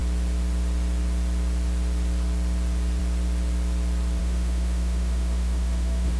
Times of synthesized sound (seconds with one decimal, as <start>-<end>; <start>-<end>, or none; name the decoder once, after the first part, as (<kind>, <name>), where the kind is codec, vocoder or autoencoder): 4.2-6.2 (autoencoder, DAC-VAE)